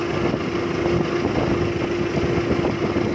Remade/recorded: recorded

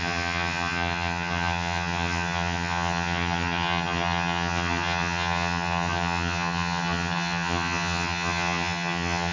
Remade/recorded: remade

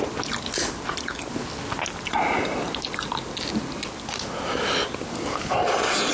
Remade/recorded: recorded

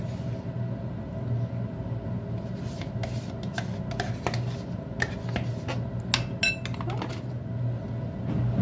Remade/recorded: recorded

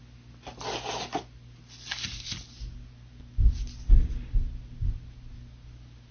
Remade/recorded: recorded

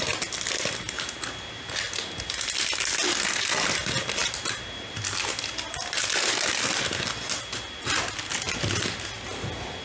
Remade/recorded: recorded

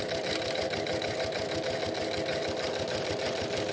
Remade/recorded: recorded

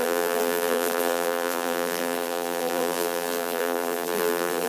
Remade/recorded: remade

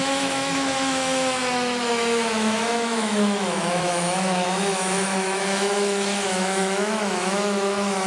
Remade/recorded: remade